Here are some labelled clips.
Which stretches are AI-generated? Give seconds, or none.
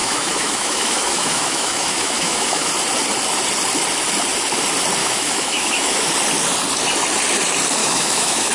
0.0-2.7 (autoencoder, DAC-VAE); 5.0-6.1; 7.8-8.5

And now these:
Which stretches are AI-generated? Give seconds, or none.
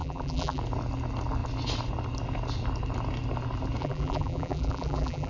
0.0-0.6 (vocoder, BigVGAN v2); 3.8-5.3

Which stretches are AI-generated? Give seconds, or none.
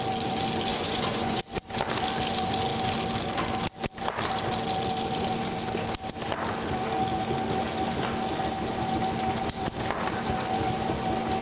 0.7-1.4 (vocoder, Vocos)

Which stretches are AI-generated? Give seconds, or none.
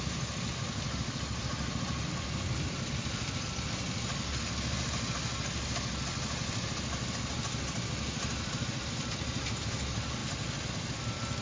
none